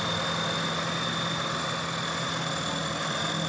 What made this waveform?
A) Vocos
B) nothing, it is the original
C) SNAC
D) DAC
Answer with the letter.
B